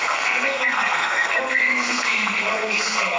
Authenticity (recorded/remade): remade